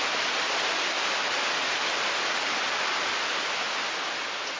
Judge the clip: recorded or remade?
recorded